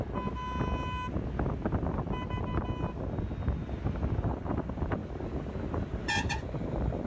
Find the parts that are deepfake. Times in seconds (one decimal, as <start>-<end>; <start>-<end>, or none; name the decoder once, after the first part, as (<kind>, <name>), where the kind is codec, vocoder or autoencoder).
4.3-5.0 (vocoder, BigVGAN v2); 5.7-7.1